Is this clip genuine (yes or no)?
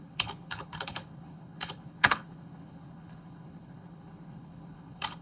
no